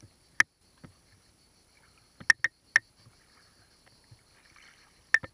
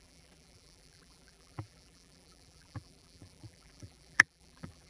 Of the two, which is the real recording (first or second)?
first